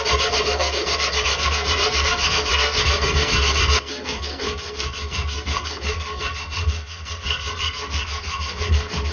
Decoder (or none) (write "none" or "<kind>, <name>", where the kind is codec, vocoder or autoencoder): codec, SNAC